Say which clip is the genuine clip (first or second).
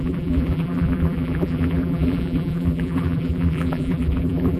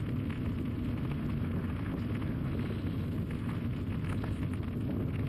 second